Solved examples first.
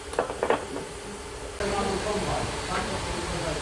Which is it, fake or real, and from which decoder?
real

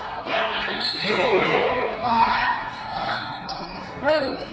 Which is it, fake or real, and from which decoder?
fake, codec, SNAC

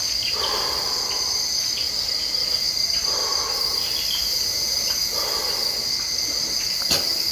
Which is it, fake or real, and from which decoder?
real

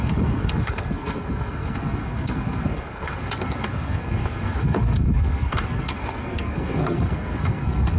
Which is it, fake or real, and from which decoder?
fake, codec, SNAC